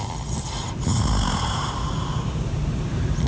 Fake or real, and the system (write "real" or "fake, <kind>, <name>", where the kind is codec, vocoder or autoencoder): real